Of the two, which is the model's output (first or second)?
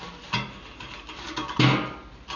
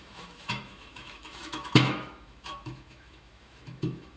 second